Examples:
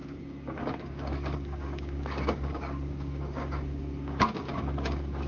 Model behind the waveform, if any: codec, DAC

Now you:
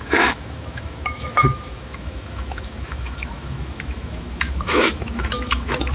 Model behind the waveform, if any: autoencoder, DAC-VAE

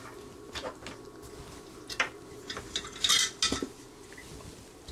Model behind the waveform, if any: none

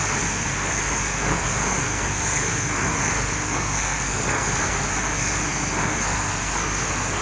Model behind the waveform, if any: codec, SNAC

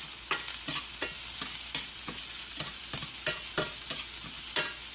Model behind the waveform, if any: none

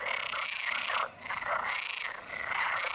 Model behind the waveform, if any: vocoder, BigVGAN v2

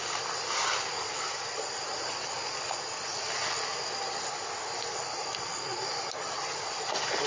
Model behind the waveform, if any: none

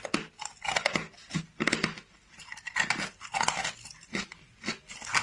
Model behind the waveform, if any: none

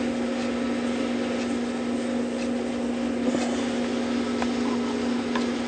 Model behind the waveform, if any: none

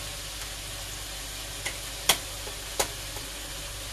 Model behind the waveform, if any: none